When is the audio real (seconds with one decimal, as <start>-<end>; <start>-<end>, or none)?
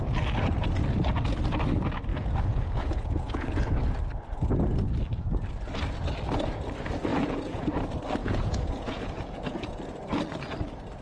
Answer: 0.0-2.1; 3.6-7.1; 7.7-8.2; 9.8-11.0